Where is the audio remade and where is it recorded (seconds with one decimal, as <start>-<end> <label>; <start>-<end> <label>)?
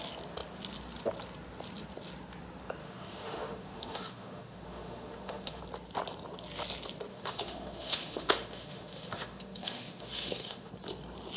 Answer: 0.0-2.8 recorded; 2.8-5.6 remade; 5.6-7.1 recorded; 7.1-10.7 remade; 10.7-11.4 recorded